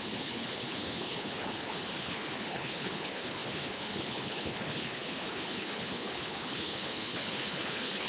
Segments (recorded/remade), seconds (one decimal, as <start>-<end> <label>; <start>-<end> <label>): 0.0-8.1 remade